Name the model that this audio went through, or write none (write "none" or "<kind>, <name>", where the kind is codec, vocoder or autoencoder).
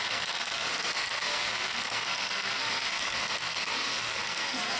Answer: codec, SNAC